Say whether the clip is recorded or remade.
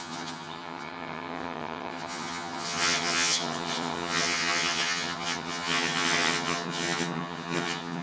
remade